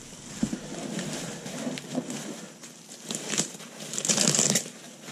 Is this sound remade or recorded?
remade